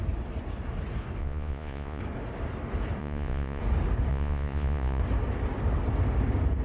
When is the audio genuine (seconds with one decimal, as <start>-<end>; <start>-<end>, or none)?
0.0-1.2; 2.0-3.0; 3.6-4.1; 5.0-6.6